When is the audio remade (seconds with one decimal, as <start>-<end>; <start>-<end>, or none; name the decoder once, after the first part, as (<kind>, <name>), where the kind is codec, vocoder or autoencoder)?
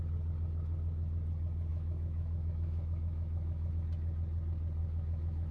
1.7-3.7 (autoencoder, DAC-VAE); 4.8-5.5